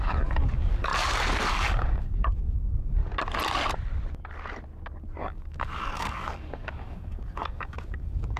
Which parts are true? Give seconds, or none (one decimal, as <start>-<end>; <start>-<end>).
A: 0.9-1.5; 3.0-5.2